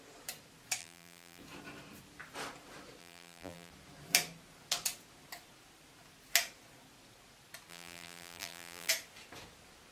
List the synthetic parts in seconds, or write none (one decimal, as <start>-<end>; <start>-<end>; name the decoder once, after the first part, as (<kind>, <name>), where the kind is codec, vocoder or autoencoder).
0.8-1.4 (vocoder, BigVGAN v2); 3.0-3.7; 7.7-8.9